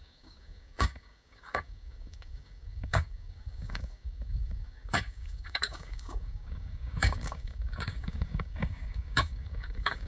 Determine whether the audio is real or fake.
fake